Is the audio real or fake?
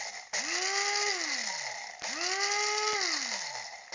real